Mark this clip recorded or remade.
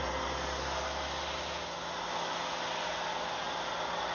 recorded